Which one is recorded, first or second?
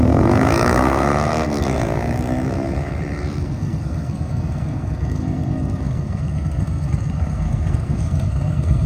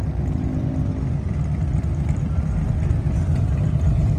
second